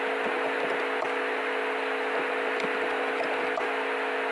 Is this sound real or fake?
real